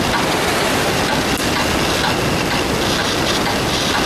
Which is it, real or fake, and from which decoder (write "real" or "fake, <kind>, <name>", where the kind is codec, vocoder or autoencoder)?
real